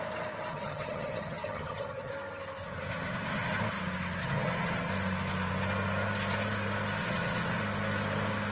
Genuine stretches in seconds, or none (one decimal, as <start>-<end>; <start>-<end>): 0.0-0.5; 2.1-2.6; 3.6-4.2; 4.9-7.0; 7.6-8.5

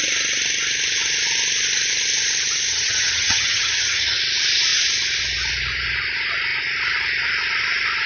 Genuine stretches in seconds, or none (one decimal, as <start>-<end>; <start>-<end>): 0.0-2.7; 4.2-8.1